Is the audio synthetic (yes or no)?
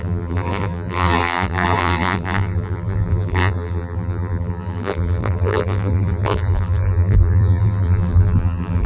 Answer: yes